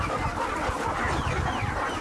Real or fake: real